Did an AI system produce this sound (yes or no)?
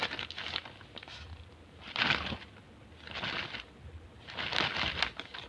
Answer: no